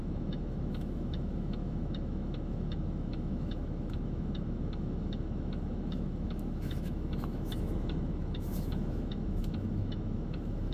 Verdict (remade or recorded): remade